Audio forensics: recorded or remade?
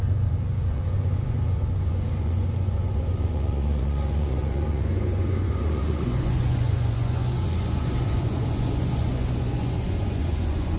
remade